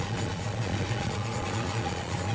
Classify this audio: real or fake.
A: fake